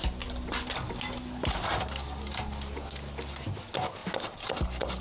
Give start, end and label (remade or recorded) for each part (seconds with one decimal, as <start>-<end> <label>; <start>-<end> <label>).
0.0-5.0 recorded